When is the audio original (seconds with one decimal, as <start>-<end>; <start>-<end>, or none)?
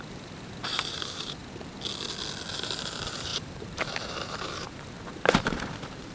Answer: 1.4-2.5